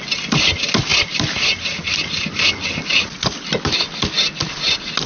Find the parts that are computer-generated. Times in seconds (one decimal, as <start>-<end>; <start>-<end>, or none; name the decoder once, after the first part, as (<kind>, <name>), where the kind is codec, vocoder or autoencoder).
none